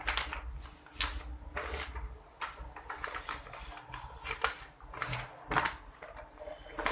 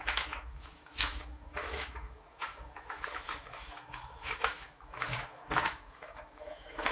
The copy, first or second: second